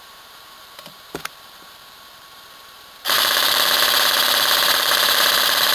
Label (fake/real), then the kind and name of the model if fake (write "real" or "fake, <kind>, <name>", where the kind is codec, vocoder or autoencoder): fake, vocoder, BigVGAN v2